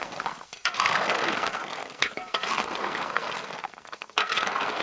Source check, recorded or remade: remade